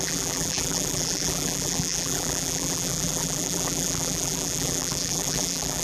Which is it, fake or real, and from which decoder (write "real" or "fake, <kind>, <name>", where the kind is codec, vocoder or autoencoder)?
fake, vocoder, BigVGAN v2